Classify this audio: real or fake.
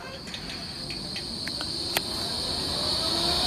real